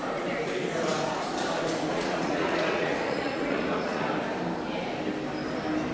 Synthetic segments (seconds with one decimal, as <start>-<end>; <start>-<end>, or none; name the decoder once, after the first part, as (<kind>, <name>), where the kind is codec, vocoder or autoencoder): 1.9-4.1 (vocoder, Vocos)